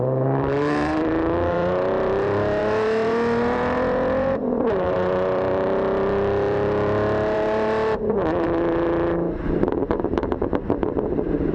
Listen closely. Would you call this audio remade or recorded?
remade